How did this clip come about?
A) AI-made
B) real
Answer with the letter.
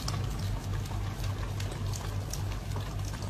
B